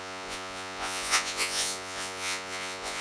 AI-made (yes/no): yes